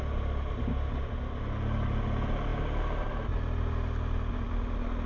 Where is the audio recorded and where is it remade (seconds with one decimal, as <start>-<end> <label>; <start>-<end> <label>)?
0.0-5.1 recorded